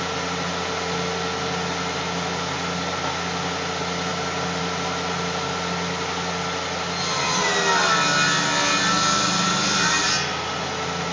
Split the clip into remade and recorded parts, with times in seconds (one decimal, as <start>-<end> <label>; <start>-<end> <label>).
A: 0.0-11.1 recorded